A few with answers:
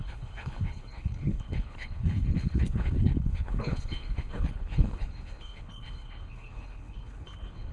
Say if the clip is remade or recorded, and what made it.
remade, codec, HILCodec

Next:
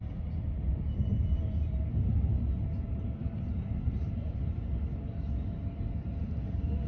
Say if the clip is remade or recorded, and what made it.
recorded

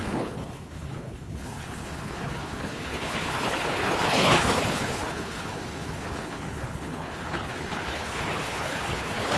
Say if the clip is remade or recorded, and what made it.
remade, codec, HILCodec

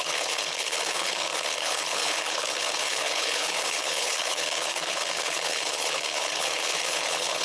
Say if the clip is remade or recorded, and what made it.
remade, codec, HILCodec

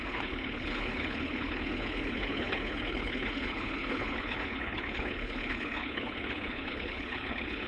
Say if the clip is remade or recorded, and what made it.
remade, codec, HILCodec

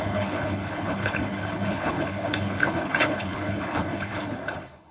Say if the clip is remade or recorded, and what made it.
remade, codec, HILCodec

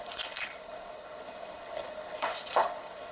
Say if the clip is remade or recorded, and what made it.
remade, codec, HILCodec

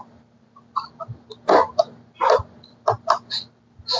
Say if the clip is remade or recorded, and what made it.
recorded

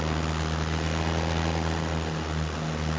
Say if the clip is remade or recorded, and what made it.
recorded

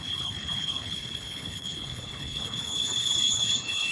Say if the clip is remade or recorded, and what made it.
remade, codec, HILCodec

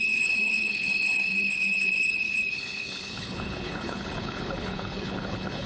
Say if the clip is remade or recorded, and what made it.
remade, codec, HILCodec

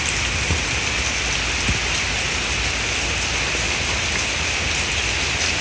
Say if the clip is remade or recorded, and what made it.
recorded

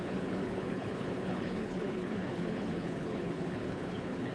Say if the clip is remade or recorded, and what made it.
remade, codec, HILCodec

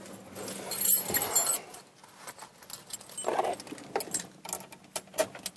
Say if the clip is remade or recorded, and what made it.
recorded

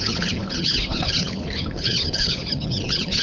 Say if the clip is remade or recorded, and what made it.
remade, codec, HILCodec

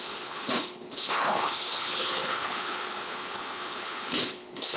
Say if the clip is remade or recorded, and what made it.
remade, codec, HILCodec